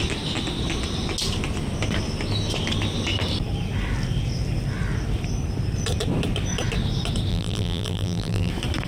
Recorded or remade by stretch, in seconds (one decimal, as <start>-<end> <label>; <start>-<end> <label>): 0.0-7.3 recorded; 7.3-8.5 remade; 8.5-8.9 recorded